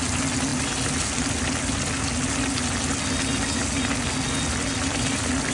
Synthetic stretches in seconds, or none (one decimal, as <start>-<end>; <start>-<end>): none

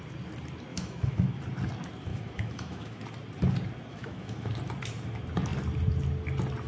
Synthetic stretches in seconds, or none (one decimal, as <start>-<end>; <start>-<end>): 0.7-1.4; 2.1-3.0; 3.9-4.5